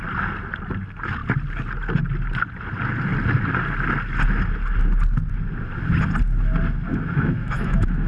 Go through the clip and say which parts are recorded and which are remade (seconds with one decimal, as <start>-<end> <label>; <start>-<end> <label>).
0.0-6.9 recorded; 6.9-8.1 remade